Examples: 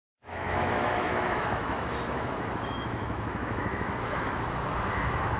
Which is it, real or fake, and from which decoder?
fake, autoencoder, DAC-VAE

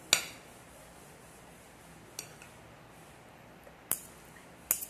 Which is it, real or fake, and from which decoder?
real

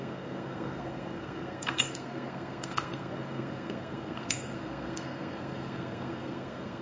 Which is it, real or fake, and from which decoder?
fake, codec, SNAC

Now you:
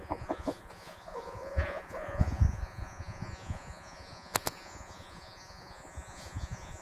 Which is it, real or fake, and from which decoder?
fake, vocoder, Vocos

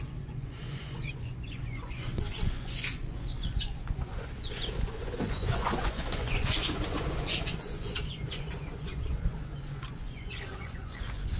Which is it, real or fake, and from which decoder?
fake, vocoder, Vocos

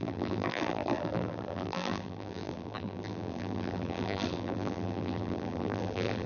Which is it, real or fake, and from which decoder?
fake, vocoder, BigVGAN v2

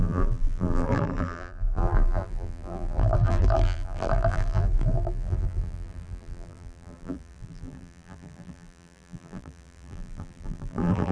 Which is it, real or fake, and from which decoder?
fake, vocoder, BigVGAN v2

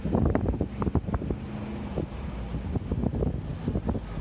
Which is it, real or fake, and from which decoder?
real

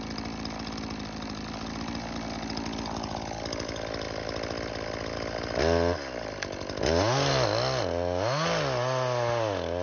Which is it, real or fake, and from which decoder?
real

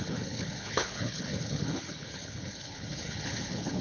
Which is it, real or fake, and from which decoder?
fake, codec, HILCodec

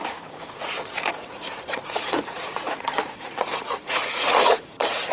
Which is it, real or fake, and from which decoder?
fake, vocoder, Vocos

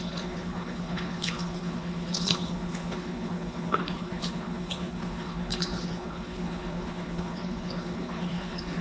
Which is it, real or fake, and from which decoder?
fake, codec, HILCodec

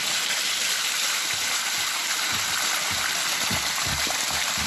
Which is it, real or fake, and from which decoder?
real